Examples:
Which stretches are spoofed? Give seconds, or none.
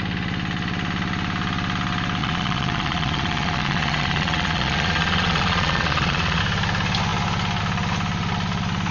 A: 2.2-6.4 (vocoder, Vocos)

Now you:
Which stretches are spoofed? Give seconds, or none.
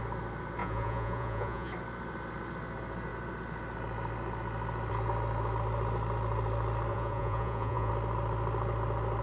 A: 0.6-1.7 (vocoder, Vocos); 6.9-7.9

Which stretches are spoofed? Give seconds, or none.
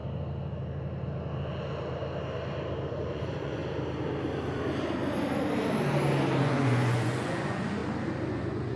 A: 2.9-3.6 (vocoder, Vocos); 6.4-7.8; 8.3-8.8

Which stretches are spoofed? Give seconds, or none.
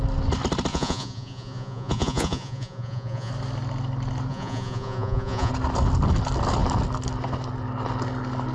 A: 0.7-3.3 (vocoder, Vocos); 4.3-5.5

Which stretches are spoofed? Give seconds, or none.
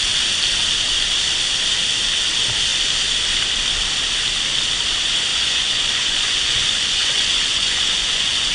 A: 5.3-8.5 (vocoder, Vocos)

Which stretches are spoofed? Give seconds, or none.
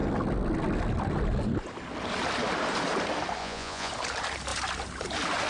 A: 3.4-3.9 (vocoder, Vocos)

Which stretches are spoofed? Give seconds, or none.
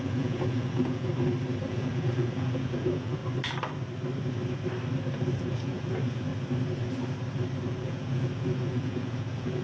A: 0.0-1.1 (vocoder, Vocos); 1.7-3.2; 5.4-6.3; 7.7-9.6